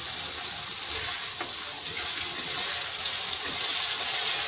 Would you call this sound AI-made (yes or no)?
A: no